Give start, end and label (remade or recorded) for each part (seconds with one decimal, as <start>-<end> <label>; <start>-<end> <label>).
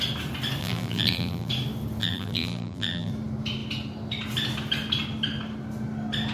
0.0-0.6 recorded; 0.6-1.5 remade; 1.5-2.0 recorded; 2.0-3.1 remade; 3.1-6.3 recorded